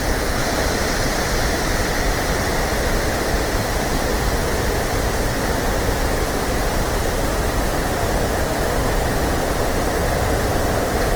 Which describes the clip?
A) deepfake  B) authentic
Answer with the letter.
A